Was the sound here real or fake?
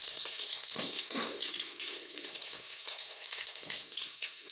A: fake